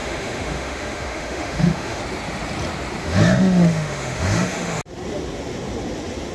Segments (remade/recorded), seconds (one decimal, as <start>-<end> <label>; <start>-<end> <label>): 0.0-2.0 remade; 2.0-3.0 recorded; 3.0-4.8 remade; 4.8-6.3 recorded